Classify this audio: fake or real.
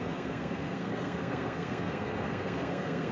fake